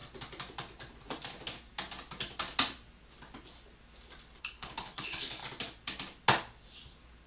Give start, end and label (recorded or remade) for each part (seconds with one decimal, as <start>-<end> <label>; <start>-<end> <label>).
0.0-4.4 recorded; 4.4-5.4 remade; 5.4-7.3 recorded